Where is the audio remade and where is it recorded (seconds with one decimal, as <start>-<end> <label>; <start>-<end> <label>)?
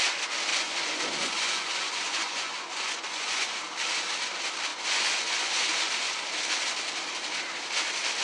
0.0-0.5 recorded; 0.5-3.6 remade; 3.6-4.7 recorded; 4.7-5.9 remade; 5.9-8.2 recorded